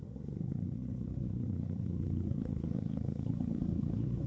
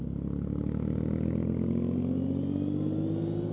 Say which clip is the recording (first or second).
second